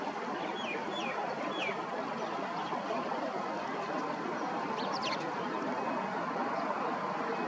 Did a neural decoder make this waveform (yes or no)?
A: no